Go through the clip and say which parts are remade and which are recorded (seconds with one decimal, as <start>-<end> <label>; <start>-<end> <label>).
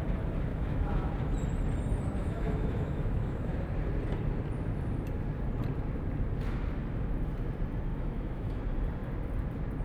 0.0-0.5 recorded; 0.5-1.1 remade; 1.1-2.2 recorded; 2.2-3.5 remade; 3.5-7.9 recorded; 7.9-8.6 remade; 8.6-9.8 recorded